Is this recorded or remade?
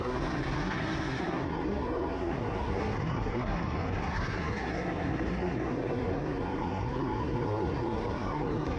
remade